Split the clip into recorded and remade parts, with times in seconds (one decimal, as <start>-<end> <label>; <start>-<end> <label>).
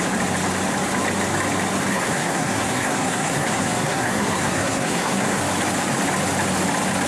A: 0.0-1.9 recorded; 1.9-5.4 remade; 5.4-7.1 recorded